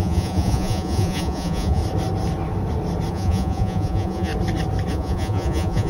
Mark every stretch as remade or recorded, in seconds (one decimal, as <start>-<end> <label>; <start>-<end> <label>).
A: 0.0-1.8 remade; 1.8-3.1 recorded; 3.1-4.3 remade; 4.3-4.9 recorded; 4.9-5.9 remade